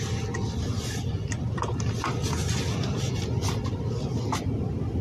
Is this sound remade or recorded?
recorded